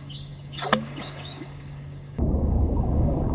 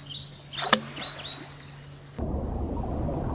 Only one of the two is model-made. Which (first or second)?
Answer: first